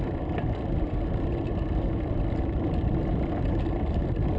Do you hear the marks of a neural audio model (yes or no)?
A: no